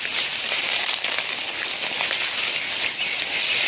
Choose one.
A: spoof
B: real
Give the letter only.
B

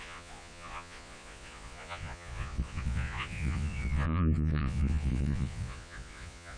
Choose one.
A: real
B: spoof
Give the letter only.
B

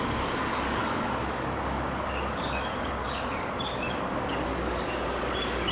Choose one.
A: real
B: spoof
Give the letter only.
B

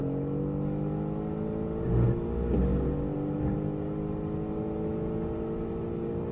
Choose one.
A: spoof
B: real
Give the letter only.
B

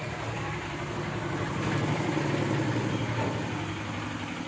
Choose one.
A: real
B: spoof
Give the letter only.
A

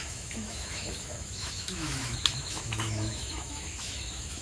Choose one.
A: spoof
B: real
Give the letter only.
A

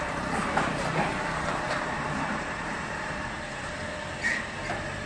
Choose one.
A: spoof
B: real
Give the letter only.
A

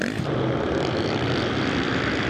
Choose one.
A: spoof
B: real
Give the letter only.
A